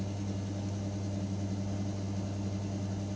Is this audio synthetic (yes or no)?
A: no